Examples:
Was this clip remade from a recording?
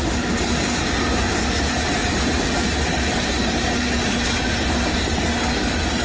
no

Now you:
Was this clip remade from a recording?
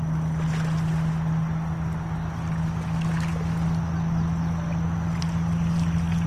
no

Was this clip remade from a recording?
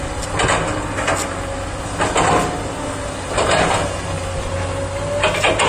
no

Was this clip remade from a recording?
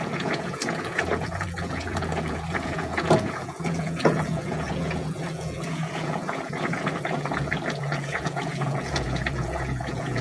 yes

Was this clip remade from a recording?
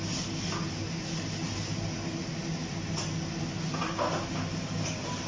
no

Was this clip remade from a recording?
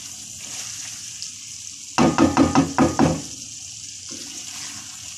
no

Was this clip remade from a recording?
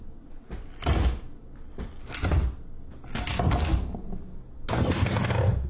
no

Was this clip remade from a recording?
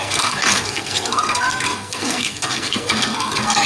yes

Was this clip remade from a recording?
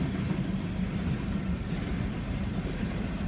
yes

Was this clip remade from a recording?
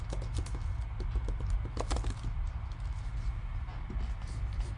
no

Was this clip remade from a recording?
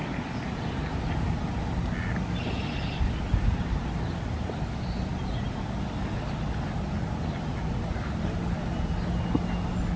no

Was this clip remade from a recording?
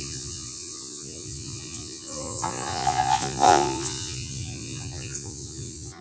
yes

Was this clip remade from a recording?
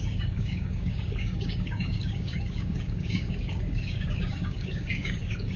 yes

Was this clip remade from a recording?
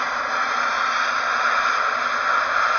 no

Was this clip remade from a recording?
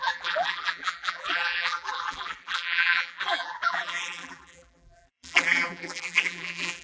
yes